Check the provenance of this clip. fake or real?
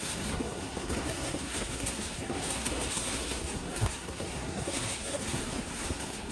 fake